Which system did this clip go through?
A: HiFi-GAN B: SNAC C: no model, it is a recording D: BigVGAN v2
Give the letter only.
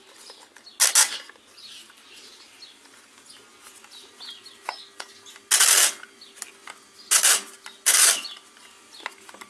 C